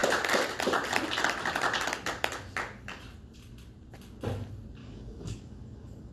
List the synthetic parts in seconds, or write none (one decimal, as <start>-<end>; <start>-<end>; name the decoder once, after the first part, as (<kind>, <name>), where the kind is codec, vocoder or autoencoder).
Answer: 4.8-6.1 (codec, DAC)